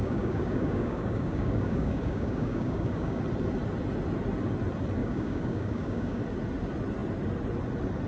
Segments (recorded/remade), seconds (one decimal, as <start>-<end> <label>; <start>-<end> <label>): 0.0-3.2 remade; 3.2-5.0 recorded; 5.0-6.2 remade; 6.2-8.1 recorded